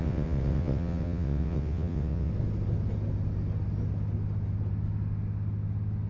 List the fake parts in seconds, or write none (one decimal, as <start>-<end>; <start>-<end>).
0.0-2.3